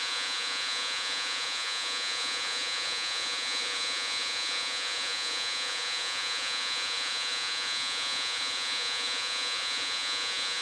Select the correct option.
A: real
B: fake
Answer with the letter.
B